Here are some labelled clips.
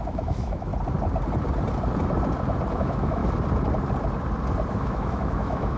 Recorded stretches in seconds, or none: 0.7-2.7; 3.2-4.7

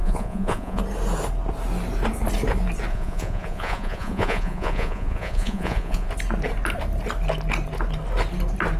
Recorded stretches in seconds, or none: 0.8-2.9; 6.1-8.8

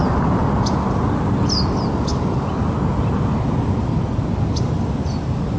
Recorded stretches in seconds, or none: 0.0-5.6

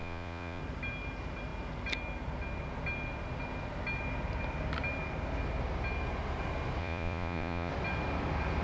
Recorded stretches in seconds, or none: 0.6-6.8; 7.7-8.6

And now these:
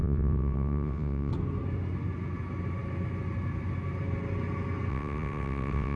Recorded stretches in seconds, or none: 1.3-4.9

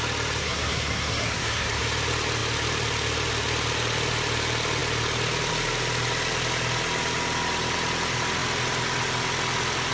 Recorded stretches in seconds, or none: 0.0-0.4; 1.8-9.9